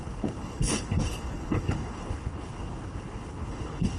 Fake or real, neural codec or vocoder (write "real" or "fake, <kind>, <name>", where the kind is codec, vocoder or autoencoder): fake, codec, HILCodec